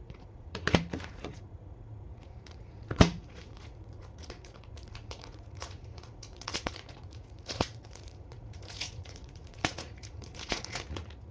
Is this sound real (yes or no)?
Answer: no